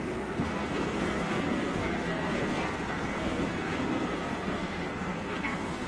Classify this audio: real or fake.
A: fake